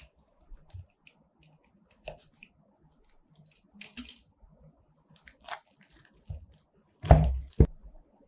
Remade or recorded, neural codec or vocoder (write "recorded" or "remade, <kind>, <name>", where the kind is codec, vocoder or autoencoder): recorded